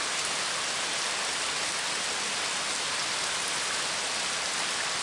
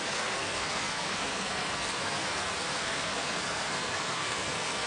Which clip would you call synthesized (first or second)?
second